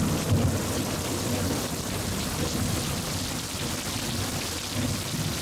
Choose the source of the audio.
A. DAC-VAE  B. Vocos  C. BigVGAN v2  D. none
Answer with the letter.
D